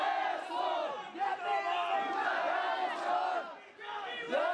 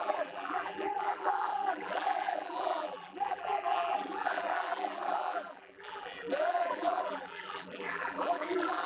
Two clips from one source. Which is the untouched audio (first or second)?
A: first